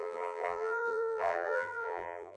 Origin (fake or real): fake